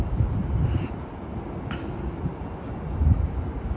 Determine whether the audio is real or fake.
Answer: real